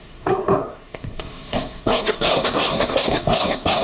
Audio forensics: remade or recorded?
remade